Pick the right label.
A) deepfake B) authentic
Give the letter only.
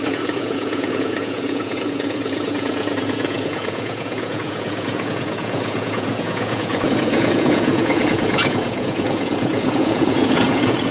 A